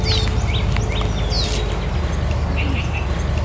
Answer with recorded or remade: recorded